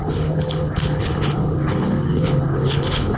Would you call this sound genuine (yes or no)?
no